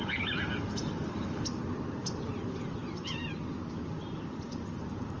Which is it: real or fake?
real